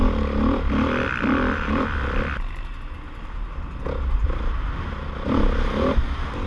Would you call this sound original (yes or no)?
yes